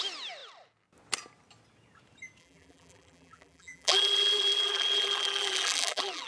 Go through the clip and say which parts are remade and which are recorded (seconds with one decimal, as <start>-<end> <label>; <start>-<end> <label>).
0.0-2.4 recorded; 2.4-6.3 remade